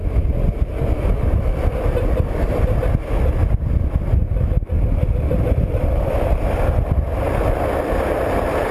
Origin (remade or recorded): recorded